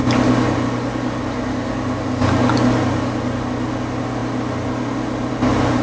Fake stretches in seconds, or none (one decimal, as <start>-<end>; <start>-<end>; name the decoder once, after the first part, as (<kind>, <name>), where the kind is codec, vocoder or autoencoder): none

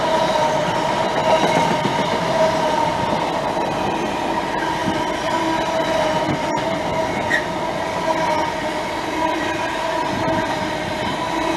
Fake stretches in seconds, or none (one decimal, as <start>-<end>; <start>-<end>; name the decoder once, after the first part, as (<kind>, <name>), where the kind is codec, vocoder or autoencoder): none

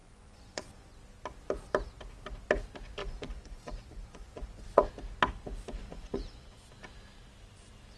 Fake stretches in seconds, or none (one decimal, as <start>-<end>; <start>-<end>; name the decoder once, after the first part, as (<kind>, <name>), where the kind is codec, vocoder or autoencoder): 0.0-0.9 (vocoder, Vocos); 3.0-4.9; 5.8-6.7